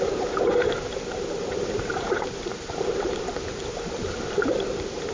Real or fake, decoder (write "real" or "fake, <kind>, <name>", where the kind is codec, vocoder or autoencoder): fake, vocoder, BigVGAN v2